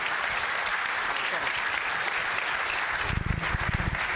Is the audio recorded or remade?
recorded